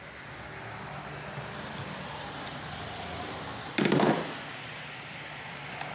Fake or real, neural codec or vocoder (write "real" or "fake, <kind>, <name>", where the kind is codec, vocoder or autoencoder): real